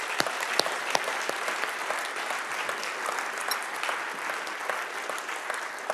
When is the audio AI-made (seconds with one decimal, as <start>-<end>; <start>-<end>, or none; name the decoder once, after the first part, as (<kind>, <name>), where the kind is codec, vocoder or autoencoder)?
none